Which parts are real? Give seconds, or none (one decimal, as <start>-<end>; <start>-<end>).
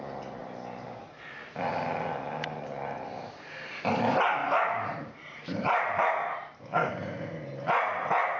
0.0-0.4; 1.0-4.4; 6.9-8.4